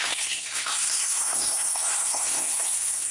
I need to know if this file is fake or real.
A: fake